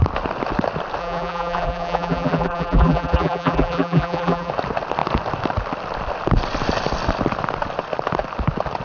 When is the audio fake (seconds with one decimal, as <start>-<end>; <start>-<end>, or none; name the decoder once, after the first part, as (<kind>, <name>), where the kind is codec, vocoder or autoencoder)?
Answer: 1.0-4.5 (vocoder, BigVGAN v2)